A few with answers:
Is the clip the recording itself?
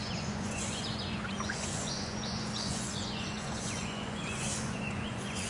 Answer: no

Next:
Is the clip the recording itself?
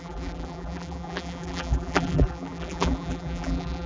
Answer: no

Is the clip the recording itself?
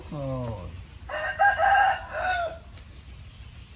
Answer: yes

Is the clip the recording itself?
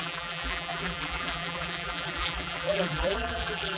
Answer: no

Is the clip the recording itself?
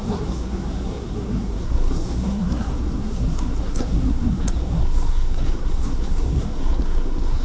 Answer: no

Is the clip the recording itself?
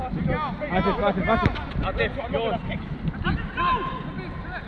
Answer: yes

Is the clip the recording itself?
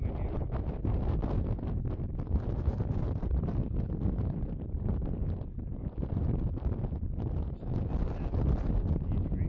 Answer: yes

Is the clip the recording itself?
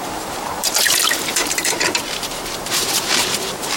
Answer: no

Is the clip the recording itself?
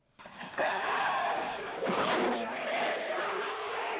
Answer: no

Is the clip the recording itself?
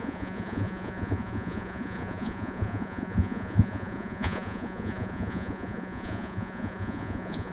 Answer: no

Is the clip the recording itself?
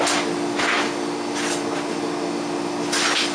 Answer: yes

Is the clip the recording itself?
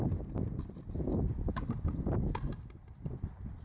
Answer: yes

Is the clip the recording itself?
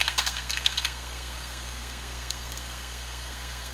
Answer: no